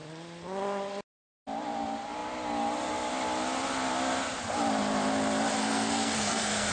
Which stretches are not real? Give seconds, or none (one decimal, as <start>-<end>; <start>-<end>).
5.6-6.7